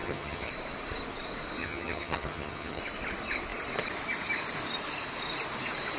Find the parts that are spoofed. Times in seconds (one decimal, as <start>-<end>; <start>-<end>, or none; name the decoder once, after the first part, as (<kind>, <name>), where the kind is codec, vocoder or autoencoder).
0.0-0.5 (vocoder, HiFi-GAN); 1.6-2.8